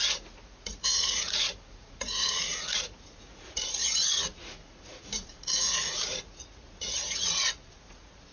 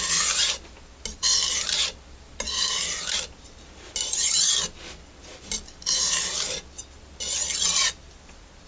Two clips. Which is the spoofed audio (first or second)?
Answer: first